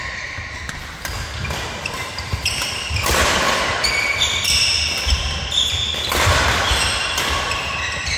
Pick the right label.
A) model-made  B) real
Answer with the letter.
B